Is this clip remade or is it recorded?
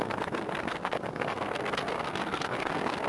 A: remade